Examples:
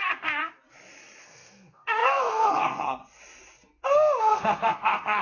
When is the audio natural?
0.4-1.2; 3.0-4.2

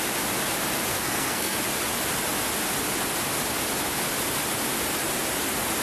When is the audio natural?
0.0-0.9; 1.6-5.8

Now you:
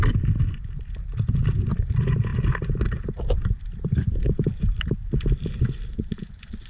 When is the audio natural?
0.0-6.7

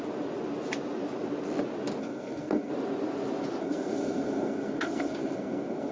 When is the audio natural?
0.0-2.0; 2.7-3.6

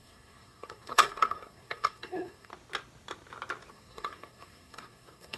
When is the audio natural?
2.5-3.7

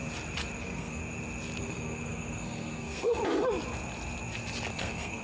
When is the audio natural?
0.0-0.6; 1.0-1.6; 3.2-4.7

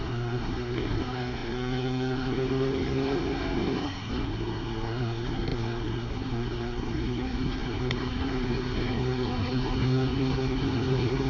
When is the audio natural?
none

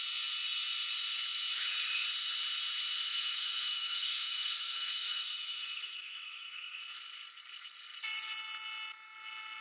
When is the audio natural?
0.0-3.1; 6.8-9.6